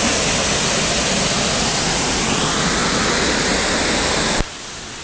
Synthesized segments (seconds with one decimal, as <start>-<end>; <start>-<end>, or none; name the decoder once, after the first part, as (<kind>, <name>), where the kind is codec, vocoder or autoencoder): none